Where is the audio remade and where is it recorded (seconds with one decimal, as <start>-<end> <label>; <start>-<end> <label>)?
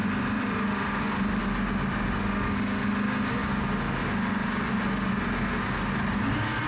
0.0-1.4 remade; 1.4-6.7 recorded